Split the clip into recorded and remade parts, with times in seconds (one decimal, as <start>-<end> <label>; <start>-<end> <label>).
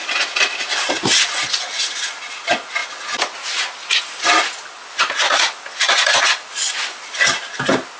0.0-8.0 recorded